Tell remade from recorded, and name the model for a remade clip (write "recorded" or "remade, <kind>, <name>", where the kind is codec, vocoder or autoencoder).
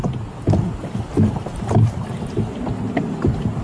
recorded